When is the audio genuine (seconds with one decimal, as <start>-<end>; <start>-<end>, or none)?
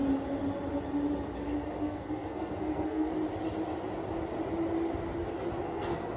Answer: 0.0-1.8; 3.1-5.6